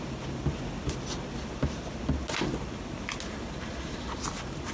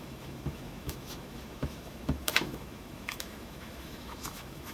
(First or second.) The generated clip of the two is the second